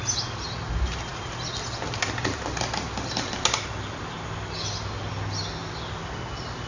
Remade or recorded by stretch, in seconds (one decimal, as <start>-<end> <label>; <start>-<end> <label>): 0.0-6.7 recorded